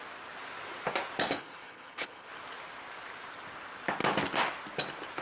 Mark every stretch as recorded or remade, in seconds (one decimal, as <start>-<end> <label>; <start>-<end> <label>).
0.0-1.4 recorded; 1.4-2.3 remade; 2.3-5.2 recorded